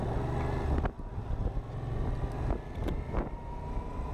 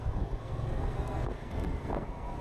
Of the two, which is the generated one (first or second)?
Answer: second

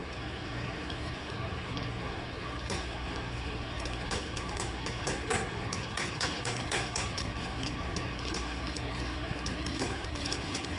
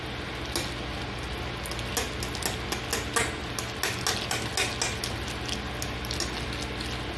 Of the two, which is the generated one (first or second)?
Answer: first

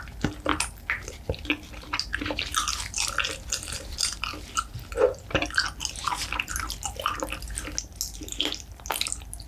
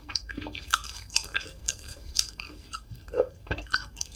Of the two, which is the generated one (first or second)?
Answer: second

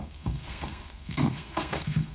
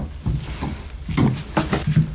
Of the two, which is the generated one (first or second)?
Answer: first